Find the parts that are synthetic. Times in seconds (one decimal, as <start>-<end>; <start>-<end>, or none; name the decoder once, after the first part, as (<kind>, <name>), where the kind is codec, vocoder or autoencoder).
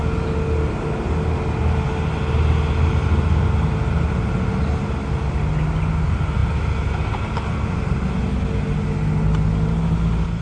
none